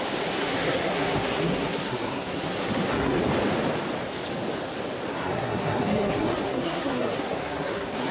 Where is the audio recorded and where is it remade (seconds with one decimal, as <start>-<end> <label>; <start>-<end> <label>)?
0.0-0.4 recorded; 0.4-3.2 remade; 3.2-5.1 recorded; 5.1-8.1 remade